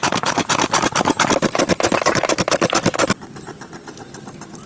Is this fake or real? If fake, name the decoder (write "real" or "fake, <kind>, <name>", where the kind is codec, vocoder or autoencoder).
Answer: real